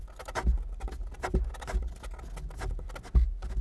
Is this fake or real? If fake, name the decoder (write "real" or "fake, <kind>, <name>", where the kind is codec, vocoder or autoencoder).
real